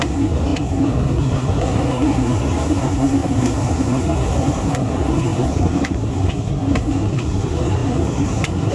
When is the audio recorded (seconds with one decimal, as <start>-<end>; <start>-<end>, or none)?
none